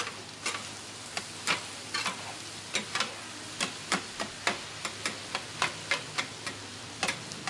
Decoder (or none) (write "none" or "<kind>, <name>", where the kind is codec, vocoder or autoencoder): none